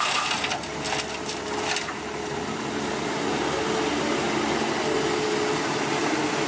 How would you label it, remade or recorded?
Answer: recorded